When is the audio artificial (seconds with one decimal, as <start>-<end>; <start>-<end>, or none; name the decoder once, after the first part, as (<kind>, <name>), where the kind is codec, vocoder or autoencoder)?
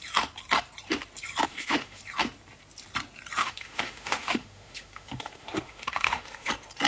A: 1.5-2.0 (autoencoder, DAC-VAE); 3.4-6.5